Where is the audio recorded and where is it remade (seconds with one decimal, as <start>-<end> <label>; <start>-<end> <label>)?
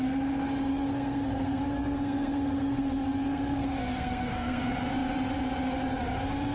0.0-0.7 recorded; 0.7-4.6 remade; 4.6-6.5 recorded